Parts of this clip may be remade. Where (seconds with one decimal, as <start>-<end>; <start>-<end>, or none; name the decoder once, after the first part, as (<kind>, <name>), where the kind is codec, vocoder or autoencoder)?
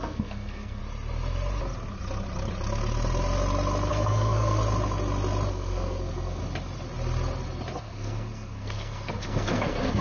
0.0-0.8 (codec, SNAC); 3.9-4.6; 5.5-6.4; 7.8-10.0